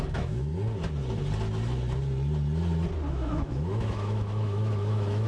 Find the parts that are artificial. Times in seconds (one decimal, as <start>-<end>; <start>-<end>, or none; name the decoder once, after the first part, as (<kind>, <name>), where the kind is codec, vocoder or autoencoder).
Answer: 0.0-0.5 (autoencoder, DAC-VAE); 3.1-5.3